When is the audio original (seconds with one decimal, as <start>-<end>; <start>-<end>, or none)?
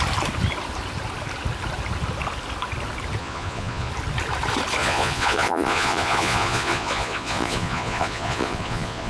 0.0-3.2; 3.9-4.8